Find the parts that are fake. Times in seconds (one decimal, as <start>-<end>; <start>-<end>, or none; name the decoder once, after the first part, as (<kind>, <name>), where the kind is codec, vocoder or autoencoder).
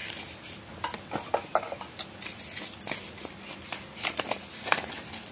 none